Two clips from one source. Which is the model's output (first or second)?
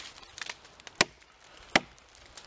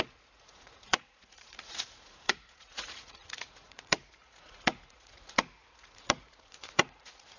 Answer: second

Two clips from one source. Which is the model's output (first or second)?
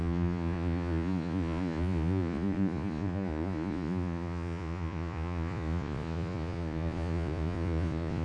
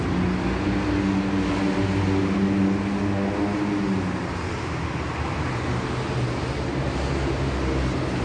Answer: first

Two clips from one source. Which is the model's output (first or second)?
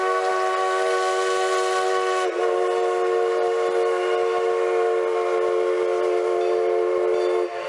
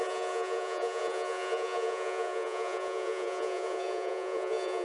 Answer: second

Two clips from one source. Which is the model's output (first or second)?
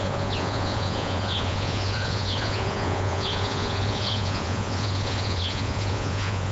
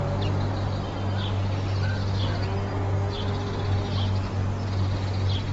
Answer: first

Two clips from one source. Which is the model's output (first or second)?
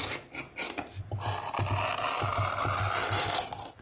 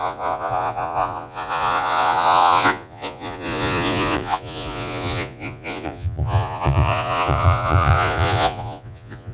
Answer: second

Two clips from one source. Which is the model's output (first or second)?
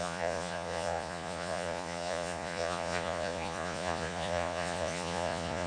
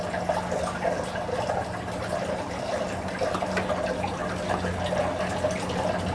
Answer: first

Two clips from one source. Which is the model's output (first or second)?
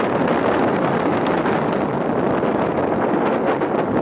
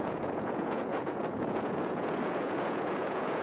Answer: second